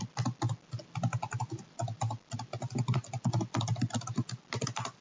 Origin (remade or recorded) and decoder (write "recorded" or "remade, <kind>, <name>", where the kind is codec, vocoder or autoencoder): recorded